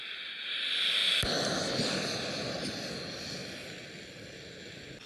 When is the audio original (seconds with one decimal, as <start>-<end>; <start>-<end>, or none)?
0.0-5.1